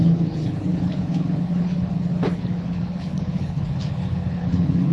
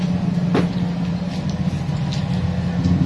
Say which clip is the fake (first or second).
first